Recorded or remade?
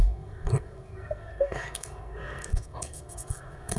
remade